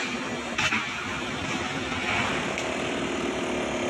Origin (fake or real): real